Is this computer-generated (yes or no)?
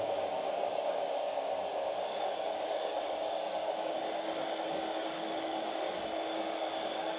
yes